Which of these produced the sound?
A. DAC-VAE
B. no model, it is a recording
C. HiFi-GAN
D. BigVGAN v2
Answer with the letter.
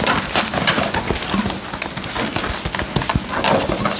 B